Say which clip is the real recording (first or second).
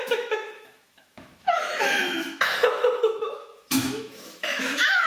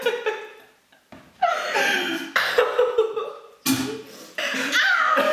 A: second